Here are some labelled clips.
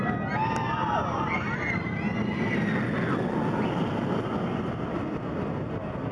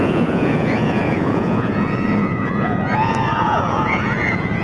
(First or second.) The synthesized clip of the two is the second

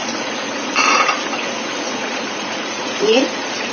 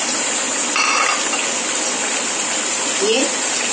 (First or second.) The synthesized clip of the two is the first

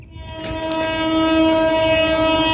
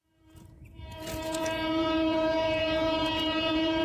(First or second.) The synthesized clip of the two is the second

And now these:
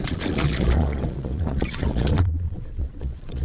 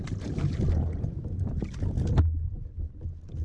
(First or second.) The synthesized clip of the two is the first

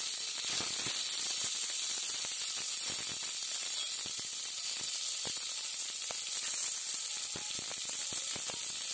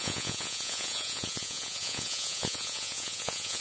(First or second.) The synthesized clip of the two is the second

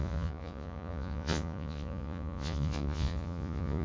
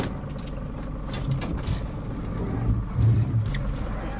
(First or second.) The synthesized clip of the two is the first